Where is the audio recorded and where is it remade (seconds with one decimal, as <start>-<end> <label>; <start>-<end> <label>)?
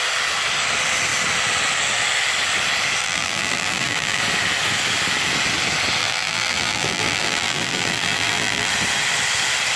0.0-3.0 recorded; 3.0-4.2 remade; 4.2-6.0 recorded; 6.0-8.7 remade; 8.7-9.8 recorded